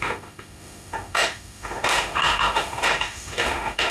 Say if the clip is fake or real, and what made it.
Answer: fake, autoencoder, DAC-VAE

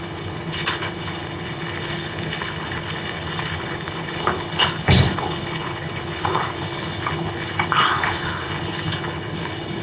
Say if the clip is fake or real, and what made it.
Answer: fake, codec, HILCodec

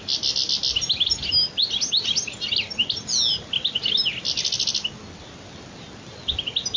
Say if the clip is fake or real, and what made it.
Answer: real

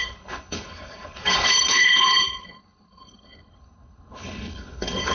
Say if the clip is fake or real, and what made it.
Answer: fake, codec, HILCodec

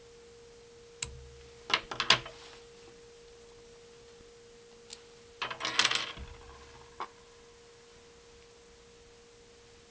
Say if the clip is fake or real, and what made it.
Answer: real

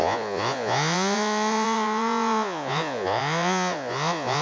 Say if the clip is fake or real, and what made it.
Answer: fake, vocoder, Vocos